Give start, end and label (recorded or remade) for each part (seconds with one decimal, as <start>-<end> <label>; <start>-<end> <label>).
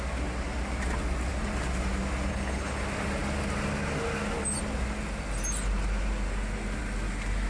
0.0-2.3 recorded; 2.3-2.8 remade; 2.8-7.5 recorded